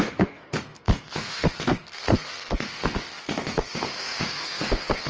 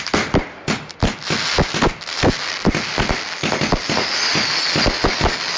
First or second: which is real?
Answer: second